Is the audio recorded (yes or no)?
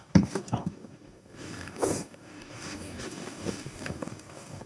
no